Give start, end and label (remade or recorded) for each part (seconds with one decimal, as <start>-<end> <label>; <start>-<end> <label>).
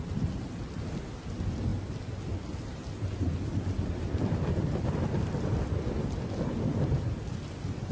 0.0-7.9 recorded